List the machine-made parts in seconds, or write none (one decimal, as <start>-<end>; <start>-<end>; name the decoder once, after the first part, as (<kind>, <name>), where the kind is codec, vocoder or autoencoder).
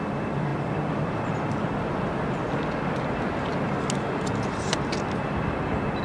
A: none